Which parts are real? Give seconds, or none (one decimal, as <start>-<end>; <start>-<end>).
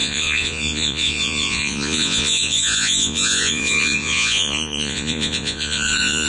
none